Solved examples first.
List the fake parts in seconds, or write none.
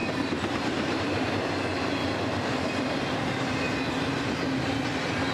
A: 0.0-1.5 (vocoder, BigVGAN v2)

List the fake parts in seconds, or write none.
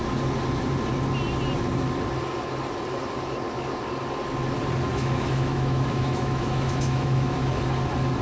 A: 4.9-7.6 (autoencoder, DAC-VAE)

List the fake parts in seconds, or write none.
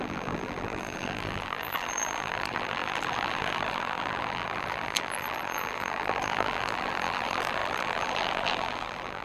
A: 0.0-9.2 (vocoder, BigVGAN v2)